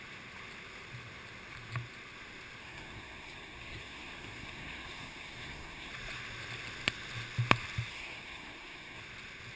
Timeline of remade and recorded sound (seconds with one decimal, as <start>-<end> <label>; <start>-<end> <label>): 0.0-2.6 recorded; 2.6-5.9 remade; 5.9-7.9 recorded; 7.9-9.0 remade; 9.0-9.6 recorded